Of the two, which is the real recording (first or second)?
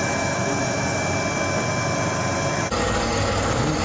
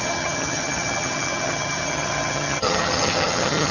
first